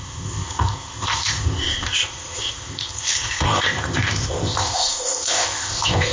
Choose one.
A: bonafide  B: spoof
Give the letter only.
B